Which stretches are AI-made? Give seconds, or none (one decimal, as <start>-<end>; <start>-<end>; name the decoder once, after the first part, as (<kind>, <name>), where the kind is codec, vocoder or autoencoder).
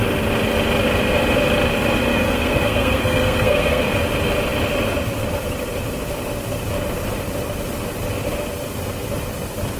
2.1-3.9 (codec, SNAC)